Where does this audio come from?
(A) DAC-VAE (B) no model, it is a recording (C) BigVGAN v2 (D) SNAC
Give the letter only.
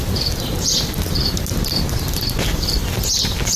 B